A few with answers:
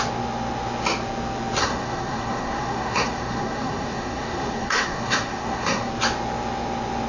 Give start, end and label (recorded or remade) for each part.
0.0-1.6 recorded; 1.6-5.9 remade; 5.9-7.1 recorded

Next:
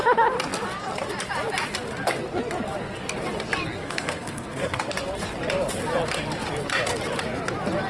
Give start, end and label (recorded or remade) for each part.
0.0-3.8 recorded; 3.8-4.9 remade; 4.9-7.9 recorded